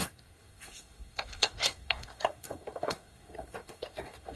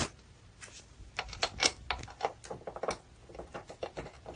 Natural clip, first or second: second